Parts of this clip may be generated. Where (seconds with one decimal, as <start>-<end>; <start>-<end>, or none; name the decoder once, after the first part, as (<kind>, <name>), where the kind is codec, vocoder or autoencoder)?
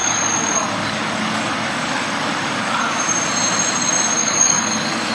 0.0-2.8 (codec, DAC); 4.2-5.1